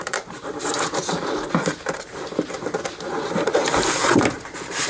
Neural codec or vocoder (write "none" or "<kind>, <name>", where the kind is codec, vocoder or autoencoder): vocoder, BigVGAN v2